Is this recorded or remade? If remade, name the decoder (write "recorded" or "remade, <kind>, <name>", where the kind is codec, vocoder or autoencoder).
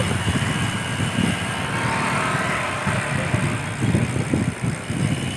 recorded